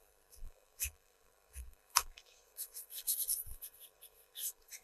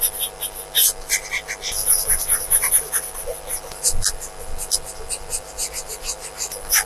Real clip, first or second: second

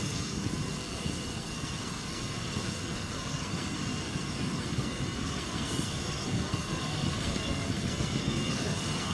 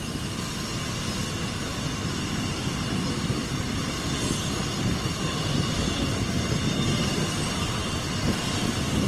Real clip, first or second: second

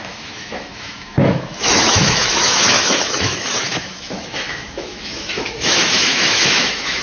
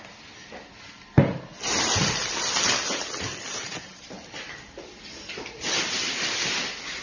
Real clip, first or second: second